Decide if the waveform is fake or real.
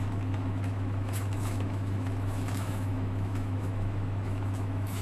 fake